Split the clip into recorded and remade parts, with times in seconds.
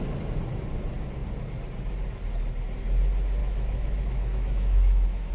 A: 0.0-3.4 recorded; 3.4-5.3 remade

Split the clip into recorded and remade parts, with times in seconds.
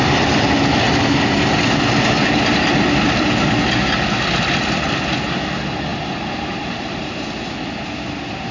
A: 0.0-8.5 recorded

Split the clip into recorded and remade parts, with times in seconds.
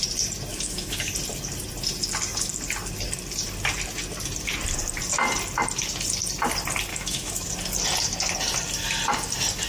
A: 0.0-0.5 recorded; 0.5-1.1 remade; 1.1-6.9 recorded; 6.9-7.5 remade; 7.5-9.7 recorded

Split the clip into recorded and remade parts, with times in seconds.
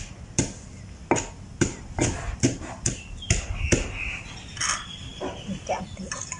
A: 0.0-6.4 recorded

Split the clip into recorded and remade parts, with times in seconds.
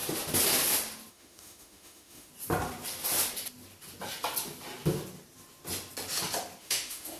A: 0.0-1.1 recorded; 1.1-2.3 remade; 2.3-6.6 recorded; 6.6-7.2 remade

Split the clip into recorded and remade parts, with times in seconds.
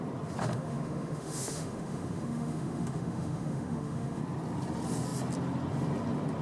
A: 0.0-0.4 recorded; 0.4-4.2 remade; 4.2-6.4 recorded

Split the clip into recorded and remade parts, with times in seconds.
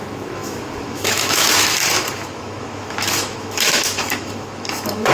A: 0.0-5.1 remade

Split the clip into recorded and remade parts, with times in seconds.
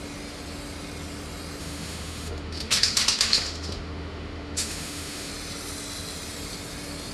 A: 0.0-1.6 recorded; 1.6-5.3 remade; 5.3-7.1 recorded